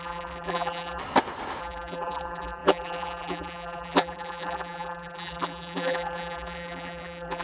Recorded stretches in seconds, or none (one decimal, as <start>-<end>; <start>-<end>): 1.0-1.6